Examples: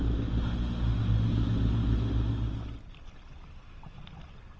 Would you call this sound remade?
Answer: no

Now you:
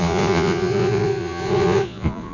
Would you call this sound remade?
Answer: yes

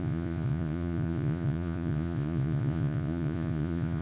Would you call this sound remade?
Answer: yes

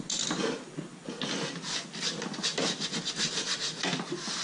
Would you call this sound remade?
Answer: no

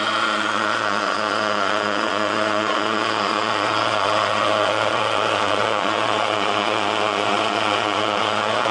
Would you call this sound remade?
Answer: yes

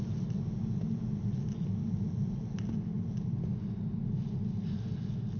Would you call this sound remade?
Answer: no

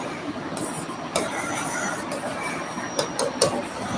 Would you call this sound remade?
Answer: no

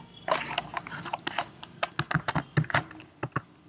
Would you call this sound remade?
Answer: no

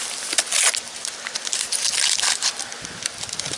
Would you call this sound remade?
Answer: no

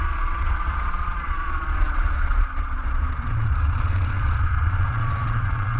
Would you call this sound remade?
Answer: yes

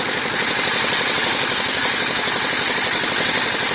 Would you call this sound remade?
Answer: no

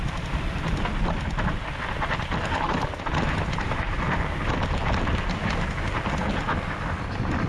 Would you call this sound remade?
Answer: no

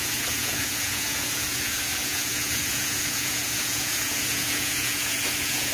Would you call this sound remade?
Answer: yes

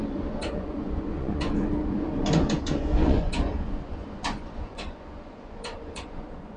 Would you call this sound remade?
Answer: yes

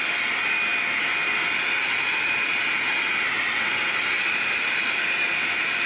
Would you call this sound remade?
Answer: no